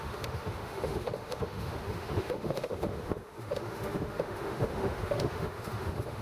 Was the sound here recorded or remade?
remade